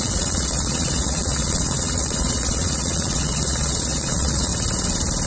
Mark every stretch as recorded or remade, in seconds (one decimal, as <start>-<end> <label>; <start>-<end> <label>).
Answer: 0.0-4.5 remade; 4.5-5.3 recorded